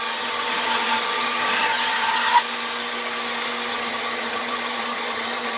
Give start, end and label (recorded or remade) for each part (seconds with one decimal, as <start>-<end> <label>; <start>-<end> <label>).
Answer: 0.0-2.3 remade; 2.3-3.7 recorded; 3.7-5.6 remade

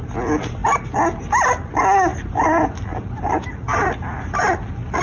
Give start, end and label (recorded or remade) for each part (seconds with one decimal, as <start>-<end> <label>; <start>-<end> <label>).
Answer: 0.0-5.0 recorded